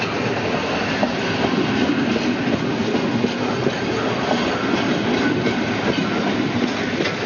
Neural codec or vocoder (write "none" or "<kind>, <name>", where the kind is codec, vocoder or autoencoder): none